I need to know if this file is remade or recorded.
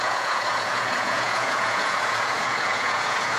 remade